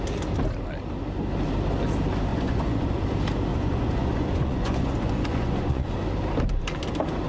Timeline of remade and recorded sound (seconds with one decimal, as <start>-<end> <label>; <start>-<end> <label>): 0.0-2.3 recorded; 2.3-3.0 remade; 3.0-3.5 recorded; 3.5-6.0 remade; 6.0-7.3 recorded

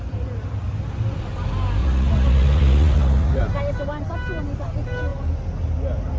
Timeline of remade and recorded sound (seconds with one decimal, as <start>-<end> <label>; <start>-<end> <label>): 0.0-1.8 recorded; 1.8-3.4 remade; 3.4-6.2 recorded